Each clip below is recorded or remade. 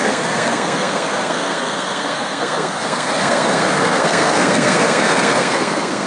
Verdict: remade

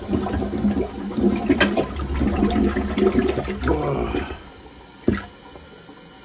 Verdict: recorded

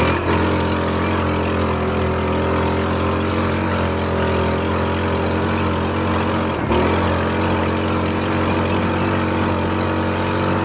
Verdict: recorded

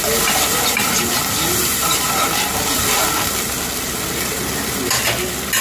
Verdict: recorded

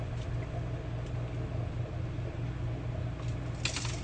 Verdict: recorded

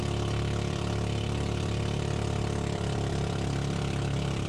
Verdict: remade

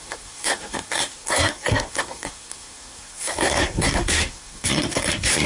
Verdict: remade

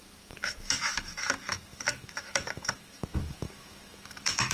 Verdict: remade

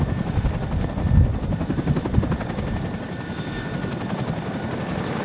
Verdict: recorded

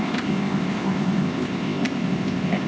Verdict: remade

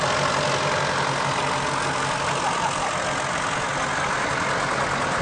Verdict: recorded